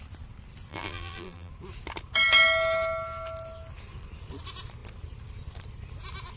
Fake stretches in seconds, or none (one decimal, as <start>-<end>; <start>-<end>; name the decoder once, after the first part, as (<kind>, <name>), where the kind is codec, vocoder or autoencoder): 0.7-1.5 (vocoder, BigVGAN v2)